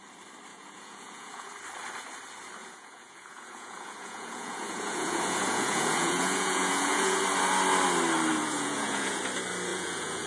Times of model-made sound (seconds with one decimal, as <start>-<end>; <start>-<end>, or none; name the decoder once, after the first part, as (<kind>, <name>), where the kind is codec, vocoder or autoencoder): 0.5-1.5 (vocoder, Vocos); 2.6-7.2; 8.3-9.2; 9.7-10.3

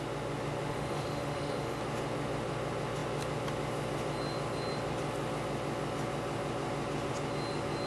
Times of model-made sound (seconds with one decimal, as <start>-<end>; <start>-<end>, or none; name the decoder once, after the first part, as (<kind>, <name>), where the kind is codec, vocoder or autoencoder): 0.7-1.8 (autoencoder, DAC-VAE)

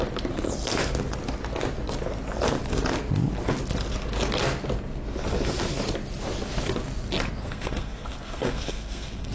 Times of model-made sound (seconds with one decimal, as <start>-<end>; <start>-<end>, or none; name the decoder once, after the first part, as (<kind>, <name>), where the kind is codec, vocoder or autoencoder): 7.4-9.3 (codec, SNAC)

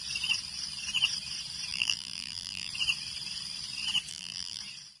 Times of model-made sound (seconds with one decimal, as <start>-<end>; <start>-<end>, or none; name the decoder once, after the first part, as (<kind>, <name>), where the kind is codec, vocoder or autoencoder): 1.7-2.7 (vocoder, BigVGAN v2); 4.1-4.6

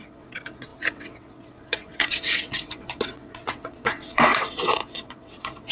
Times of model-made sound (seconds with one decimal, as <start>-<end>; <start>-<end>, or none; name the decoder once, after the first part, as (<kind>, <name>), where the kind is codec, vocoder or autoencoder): 0.0-5.7 (vocoder, WaveNeXt)

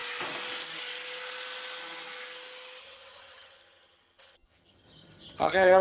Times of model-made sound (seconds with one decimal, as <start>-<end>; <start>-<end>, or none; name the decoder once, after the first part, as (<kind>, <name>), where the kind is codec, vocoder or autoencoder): 2.8-5.8 (vocoder, HiFi-GAN)